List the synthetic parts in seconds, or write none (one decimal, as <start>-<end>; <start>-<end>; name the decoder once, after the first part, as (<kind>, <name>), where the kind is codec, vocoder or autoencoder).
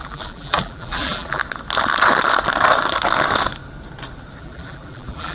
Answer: 0.0-1.4 (vocoder, BigVGAN v2); 4.4-5.3